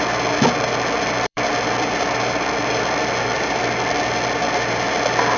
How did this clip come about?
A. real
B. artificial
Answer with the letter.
B